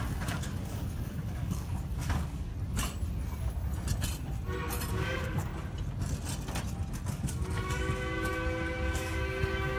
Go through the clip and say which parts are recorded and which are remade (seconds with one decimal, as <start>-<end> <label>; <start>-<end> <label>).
0.0-2.5 remade; 2.5-4.9 recorded; 4.9-5.5 remade; 5.5-7.1 recorded; 7.1-9.8 remade